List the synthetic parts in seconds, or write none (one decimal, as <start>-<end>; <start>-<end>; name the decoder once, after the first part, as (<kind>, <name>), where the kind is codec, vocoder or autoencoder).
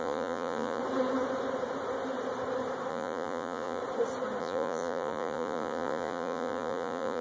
0.0-0.8 (vocoder, Vocos); 2.9-3.8; 4.4-7.2